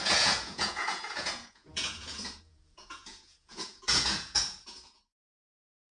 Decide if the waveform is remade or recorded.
remade